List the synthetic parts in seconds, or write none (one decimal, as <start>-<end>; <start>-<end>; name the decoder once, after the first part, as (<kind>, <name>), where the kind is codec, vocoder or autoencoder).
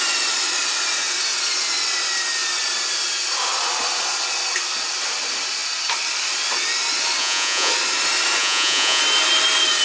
7.2-7.7 (vocoder, Vocos); 8.4-9.0